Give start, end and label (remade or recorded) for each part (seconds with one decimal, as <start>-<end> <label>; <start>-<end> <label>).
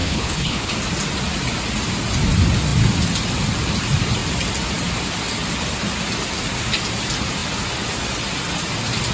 0.0-0.7 remade; 0.7-9.1 recorded